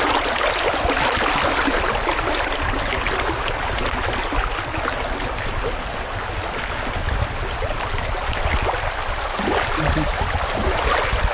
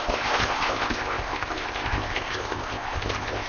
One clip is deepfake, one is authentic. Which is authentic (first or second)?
first